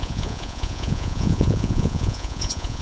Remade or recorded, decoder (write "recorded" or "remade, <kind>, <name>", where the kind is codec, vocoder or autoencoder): remade, vocoder, Vocos